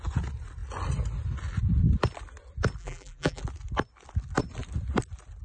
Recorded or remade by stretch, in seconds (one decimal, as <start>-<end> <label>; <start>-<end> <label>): 0.0-2.8 recorded; 2.8-3.4 remade; 3.4-5.4 recorded